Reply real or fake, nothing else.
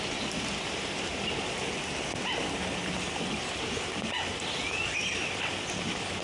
real